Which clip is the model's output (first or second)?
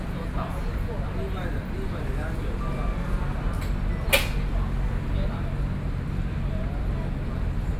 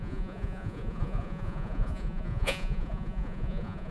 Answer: second